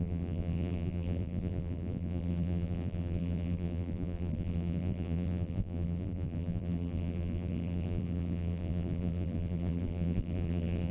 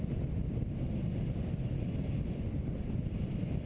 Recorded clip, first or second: second